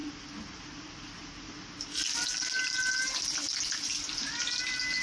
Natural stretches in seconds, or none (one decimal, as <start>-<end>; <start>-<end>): 0.0-5.0